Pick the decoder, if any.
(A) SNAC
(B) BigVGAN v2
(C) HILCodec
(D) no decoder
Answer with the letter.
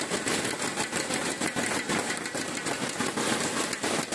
D